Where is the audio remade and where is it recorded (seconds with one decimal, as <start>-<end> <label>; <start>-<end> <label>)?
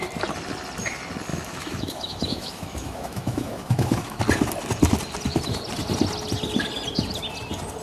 0.0-1.3 recorded; 1.3-4.2 remade; 4.2-7.8 recorded